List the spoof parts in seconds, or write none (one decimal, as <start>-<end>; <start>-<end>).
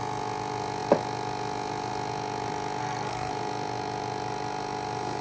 2.8-3.3